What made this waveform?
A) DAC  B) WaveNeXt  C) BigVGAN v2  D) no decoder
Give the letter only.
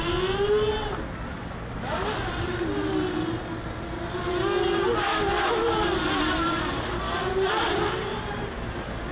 D